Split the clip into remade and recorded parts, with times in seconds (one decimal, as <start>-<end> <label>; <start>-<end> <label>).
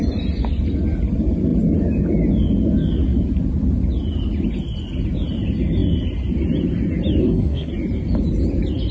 0.0-7.2 recorded; 7.2-7.7 remade; 7.7-8.9 recorded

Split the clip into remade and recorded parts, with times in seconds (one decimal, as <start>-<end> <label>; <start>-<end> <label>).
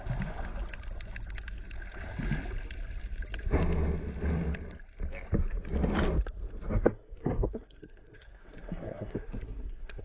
0.0-6.8 recorded; 6.8-10.0 remade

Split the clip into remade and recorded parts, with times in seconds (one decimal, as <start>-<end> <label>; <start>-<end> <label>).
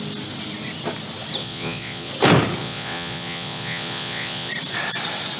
0.0-1.4 recorded; 1.4-2.1 remade; 2.1-2.6 recorded; 2.6-4.5 remade; 4.5-5.4 recorded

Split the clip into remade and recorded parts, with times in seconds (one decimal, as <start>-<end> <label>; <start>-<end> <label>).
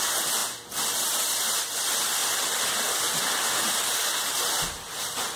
0.0-2.2 recorded; 2.2-3.1 remade; 3.1-5.4 recorded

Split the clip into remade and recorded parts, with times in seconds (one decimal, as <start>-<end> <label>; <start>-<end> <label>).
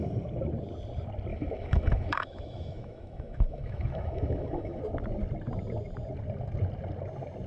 0.0-1.3 recorded; 1.3-4.8 remade; 4.8-7.5 recorded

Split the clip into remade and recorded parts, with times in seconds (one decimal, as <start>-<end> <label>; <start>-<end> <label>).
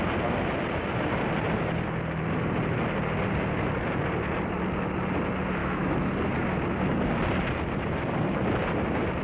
0.0-5.6 recorded; 5.6-6.1 remade; 6.1-9.2 recorded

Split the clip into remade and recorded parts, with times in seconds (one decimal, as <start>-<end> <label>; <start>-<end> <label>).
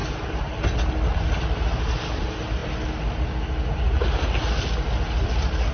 0.0-5.7 recorded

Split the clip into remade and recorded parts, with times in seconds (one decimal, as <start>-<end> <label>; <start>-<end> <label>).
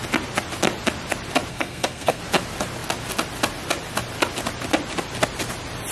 0.0-1.5 recorded; 1.5-2.2 remade; 2.2-5.9 recorded